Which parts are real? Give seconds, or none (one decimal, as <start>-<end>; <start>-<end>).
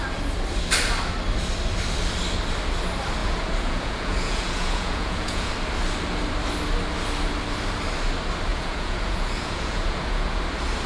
0.0-3.2; 5.5-8.5; 10.4-10.9